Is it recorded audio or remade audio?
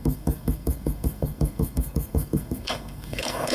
remade